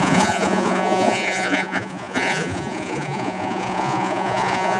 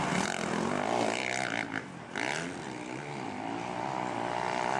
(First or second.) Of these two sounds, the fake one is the first